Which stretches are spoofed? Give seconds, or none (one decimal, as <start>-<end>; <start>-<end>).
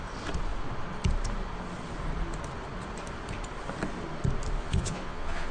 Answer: 4.6-5.5